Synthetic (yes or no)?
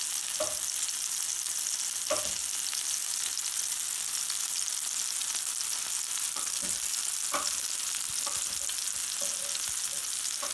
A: no